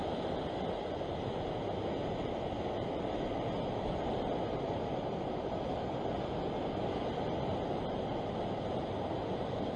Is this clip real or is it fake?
real